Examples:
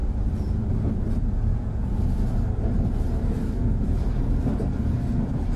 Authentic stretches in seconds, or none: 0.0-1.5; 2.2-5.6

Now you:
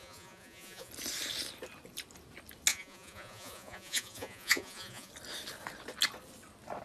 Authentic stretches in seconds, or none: 0.9-2.7; 5.1-6.8